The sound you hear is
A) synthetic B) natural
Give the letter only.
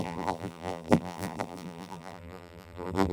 A